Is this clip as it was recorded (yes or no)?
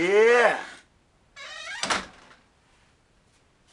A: yes